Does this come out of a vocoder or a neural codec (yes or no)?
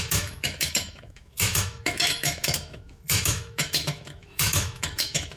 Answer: yes